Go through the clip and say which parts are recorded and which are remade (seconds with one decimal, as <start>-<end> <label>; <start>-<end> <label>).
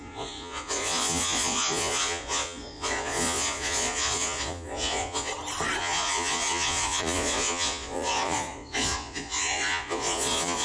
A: 0.0-5.3 remade; 5.3-5.8 recorded; 5.8-10.6 remade